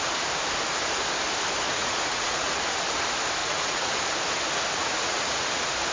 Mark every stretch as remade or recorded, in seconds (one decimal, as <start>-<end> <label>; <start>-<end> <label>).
0.0-1.7 recorded; 1.7-2.5 remade; 2.5-3.4 recorded; 3.4-3.9 remade; 3.9-4.8 recorded; 4.8-5.5 remade; 5.5-5.9 recorded